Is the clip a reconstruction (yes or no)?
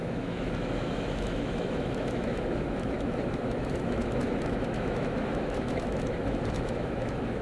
yes